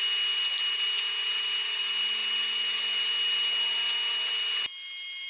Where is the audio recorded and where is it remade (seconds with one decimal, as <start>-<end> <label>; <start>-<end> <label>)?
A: 0.0-5.3 recorded